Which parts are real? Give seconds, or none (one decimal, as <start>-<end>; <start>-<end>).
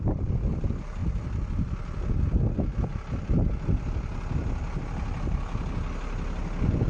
0.0-6.9